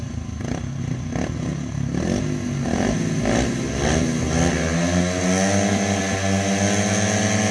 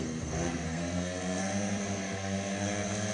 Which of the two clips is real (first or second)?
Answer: first